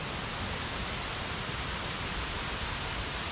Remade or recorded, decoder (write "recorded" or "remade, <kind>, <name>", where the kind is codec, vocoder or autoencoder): recorded